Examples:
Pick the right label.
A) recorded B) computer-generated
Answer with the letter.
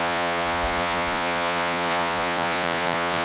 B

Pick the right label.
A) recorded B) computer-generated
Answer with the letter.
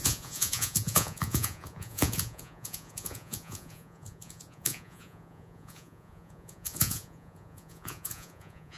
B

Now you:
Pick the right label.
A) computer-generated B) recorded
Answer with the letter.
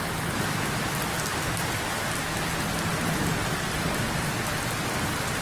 B